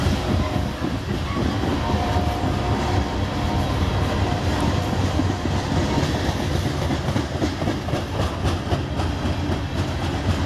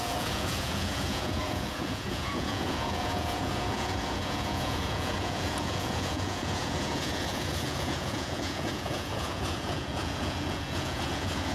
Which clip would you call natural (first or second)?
first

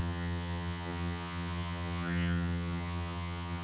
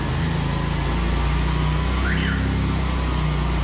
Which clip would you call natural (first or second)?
second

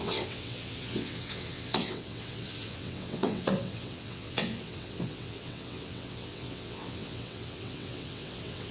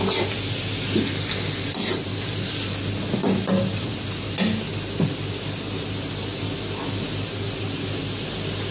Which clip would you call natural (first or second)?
second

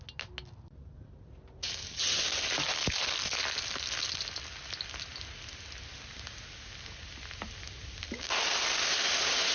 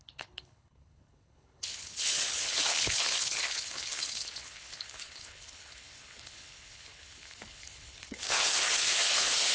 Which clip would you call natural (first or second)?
first